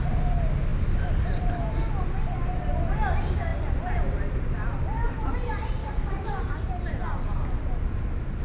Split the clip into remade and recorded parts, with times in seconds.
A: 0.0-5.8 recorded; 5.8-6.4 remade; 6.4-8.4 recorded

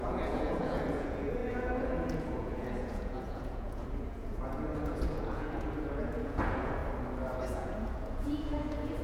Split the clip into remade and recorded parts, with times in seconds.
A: 0.0-6.8 remade; 6.8-7.4 recorded; 7.4-9.0 remade

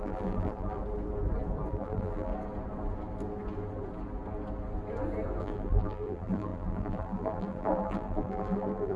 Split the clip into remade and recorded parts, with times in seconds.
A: 0.0-0.8 remade; 0.8-1.7 recorded; 1.7-2.3 remade; 2.3-5.4 recorded; 5.4-9.0 remade

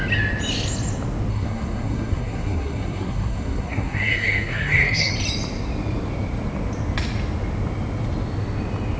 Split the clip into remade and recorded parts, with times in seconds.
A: 0.0-1.3 recorded; 1.3-5.1 remade; 5.1-9.0 recorded

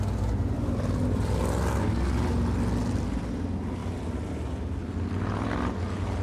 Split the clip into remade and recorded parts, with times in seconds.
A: 0.0-6.2 recorded